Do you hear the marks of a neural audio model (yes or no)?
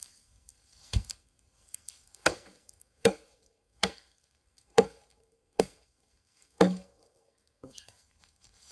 yes